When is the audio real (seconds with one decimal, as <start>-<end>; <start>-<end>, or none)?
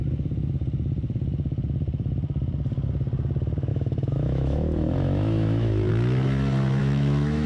0.0-3.7; 5.9-6.8